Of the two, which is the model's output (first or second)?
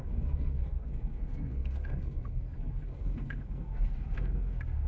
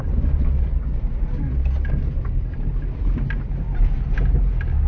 first